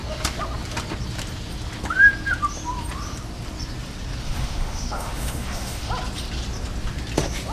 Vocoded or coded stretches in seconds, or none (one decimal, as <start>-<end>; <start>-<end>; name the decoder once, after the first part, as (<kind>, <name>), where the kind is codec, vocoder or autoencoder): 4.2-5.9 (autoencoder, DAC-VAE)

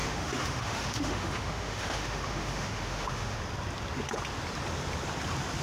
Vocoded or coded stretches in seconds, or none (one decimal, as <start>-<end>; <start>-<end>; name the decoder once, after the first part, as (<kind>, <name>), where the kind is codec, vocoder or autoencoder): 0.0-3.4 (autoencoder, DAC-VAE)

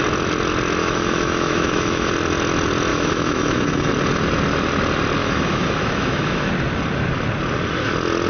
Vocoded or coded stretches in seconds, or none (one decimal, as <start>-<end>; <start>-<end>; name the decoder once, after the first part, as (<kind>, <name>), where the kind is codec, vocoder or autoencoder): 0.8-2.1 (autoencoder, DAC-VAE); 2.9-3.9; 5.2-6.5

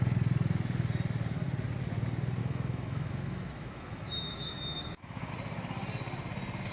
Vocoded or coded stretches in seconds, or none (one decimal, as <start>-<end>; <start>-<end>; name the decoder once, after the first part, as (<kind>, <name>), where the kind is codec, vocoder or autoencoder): 2.4-5.3 (autoencoder, DAC-VAE)

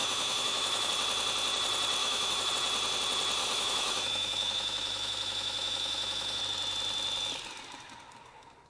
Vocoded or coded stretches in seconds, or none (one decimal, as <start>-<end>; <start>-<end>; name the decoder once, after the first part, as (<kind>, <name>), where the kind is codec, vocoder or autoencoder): 0.0-0.9 (autoencoder, DAC-VAE); 2.0-2.5; 3.4-6.4

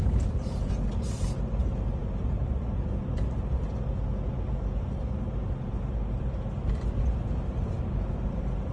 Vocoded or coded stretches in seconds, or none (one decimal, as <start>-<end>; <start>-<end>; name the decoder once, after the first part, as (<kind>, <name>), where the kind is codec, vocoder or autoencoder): none